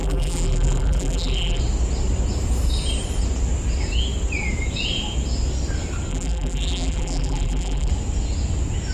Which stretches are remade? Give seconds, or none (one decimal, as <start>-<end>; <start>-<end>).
0.0-1.6; 6.1-7.9